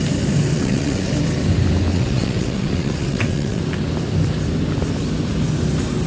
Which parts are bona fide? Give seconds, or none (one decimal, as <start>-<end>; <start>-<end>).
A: 0.0-0.5; 1.1-1.9; 3.6-6.1